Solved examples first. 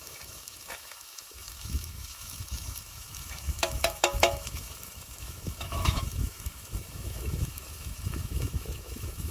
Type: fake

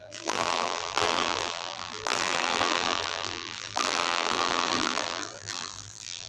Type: fake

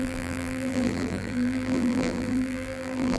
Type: fake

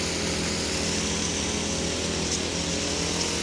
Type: real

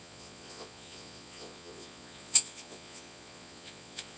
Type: fake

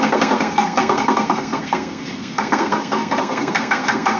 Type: fake